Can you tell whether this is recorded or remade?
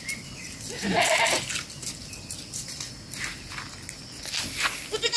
recorded